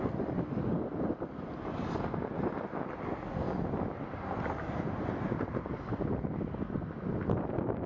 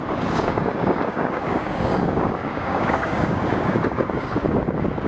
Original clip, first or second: first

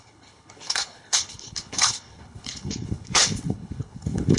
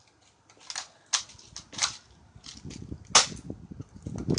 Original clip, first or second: second